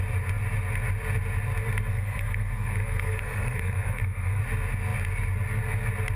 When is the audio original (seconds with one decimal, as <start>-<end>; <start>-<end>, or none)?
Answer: 0.0-1.9; 4.4-6.2